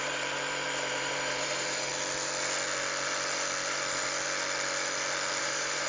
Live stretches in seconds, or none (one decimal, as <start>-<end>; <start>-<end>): 1.9-5.4